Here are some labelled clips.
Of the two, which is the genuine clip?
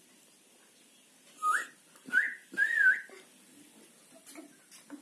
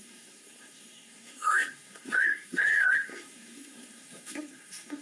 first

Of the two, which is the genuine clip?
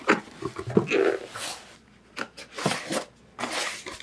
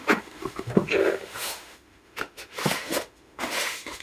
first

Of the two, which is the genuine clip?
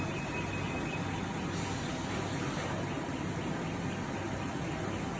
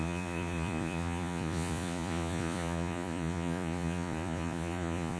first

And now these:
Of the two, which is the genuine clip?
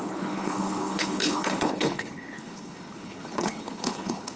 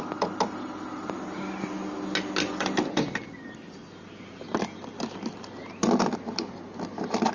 second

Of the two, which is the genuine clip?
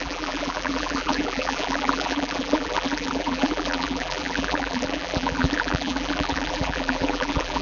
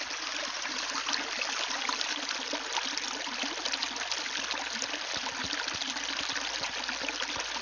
second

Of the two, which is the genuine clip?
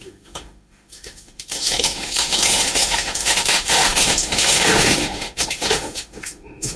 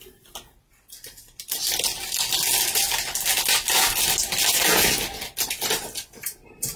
second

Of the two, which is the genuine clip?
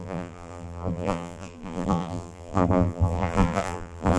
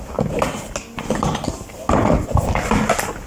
second